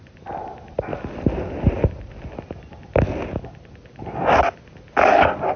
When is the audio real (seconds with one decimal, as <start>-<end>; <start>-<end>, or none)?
0.0-5.6